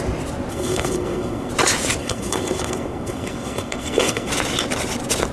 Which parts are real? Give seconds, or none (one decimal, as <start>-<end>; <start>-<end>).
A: 0.0-0.5; 1.5-2.0; 4.3-5.3